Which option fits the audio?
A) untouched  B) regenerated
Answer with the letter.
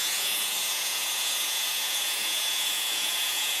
B